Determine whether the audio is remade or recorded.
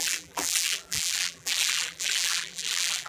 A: remade